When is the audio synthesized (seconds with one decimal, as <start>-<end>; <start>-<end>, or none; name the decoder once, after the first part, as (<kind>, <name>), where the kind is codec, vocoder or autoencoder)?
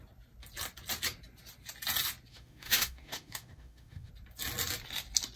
2.3-4.1 (autoencoder, DAC-VAE)